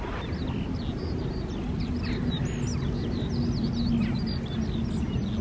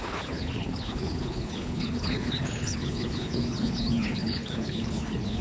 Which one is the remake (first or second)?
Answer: second